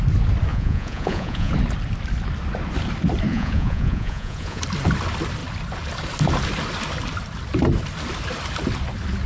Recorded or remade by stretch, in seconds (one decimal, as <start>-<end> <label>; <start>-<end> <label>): 0.0-0.5 recorded; 0.5-1.5 remade; 1.5-3.3 recorded; 3.3-4.6 remade; 4.6-9.3 recorded